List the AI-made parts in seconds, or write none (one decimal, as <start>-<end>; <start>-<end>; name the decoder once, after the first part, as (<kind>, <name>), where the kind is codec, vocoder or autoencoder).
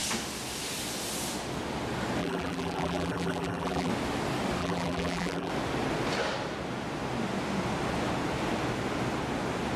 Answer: 2.2-3.9 (vocoder, BigVGAN v2); 4.6-5.5